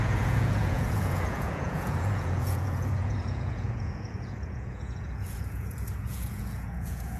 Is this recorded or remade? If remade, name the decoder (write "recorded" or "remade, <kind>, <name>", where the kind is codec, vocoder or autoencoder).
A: remade, vocoder, Vocos